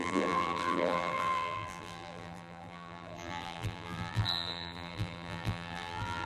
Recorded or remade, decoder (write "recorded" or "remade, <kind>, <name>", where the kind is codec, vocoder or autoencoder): remade, vocoder, BigVGAN v2